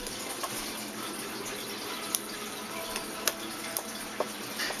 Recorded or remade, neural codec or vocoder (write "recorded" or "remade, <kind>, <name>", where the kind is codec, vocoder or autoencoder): recorded